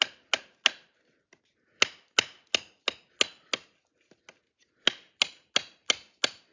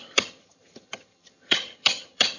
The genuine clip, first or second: first